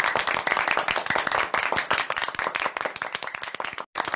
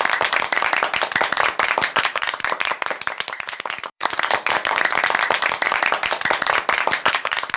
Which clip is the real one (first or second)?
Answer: first